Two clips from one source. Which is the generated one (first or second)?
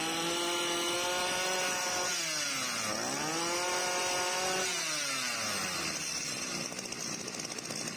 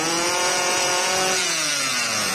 second